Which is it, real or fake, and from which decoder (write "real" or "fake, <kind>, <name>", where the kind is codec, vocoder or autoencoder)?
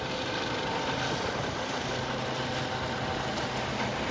real